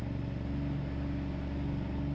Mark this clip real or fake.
real